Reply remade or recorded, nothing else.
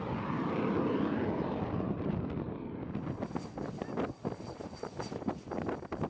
recorded